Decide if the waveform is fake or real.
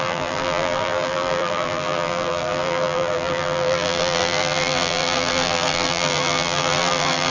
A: fake